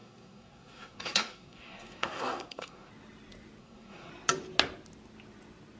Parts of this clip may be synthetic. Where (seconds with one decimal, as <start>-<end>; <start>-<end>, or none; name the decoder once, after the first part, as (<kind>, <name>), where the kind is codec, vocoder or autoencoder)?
0.0-2.9 (codec, SNAC); 3.6-4.1